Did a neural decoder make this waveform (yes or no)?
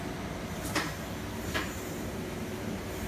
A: yes